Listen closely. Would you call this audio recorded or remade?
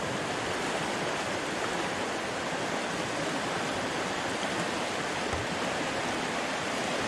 recorded